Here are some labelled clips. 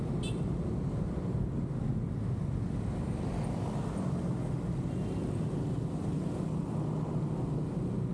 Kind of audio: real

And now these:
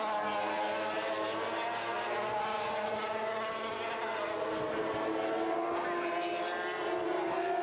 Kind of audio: real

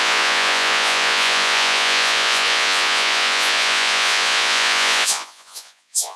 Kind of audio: fake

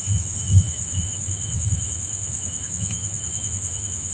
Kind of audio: fake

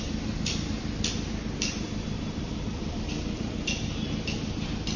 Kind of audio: real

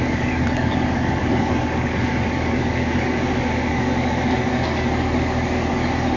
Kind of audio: fake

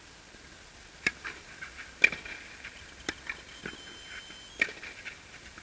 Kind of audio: real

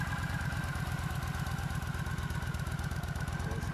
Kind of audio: real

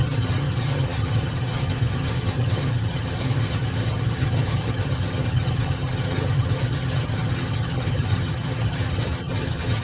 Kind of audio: fake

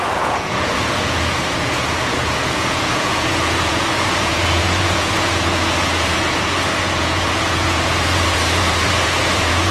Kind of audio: fake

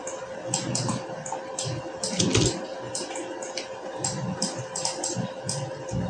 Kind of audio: real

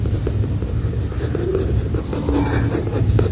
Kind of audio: real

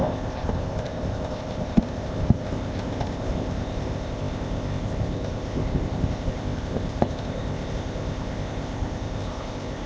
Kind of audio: fake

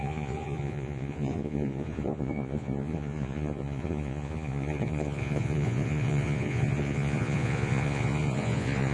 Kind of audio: fake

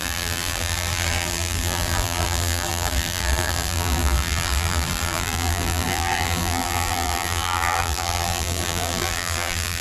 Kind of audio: fake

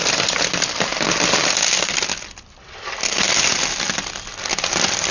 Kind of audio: real